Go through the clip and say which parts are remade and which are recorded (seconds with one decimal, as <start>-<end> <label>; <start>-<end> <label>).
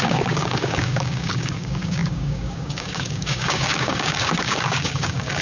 0.0-5.4 remade